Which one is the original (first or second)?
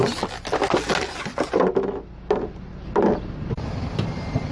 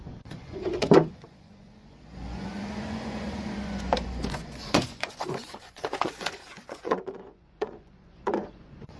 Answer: first